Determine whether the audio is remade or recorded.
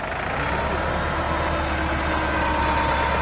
recorded